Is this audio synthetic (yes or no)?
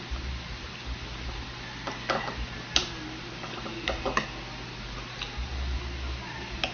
no